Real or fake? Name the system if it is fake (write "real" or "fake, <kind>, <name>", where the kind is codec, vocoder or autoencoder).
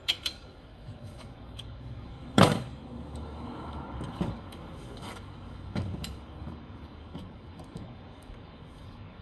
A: fake, codec, DAC